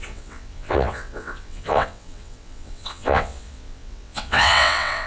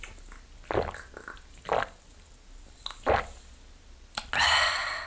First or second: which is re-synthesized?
first